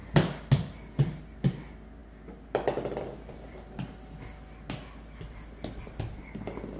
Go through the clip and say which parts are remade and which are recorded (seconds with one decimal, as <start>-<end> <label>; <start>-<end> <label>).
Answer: 0.0-6.8 recorded